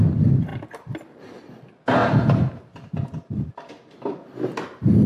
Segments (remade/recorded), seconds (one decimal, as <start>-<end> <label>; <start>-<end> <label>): 0.0-0.5 recorded; 0.5-1.6 remade; 1.6-2.0 recorded; 2.0-4.1 remade; 4.1-5.1 recorded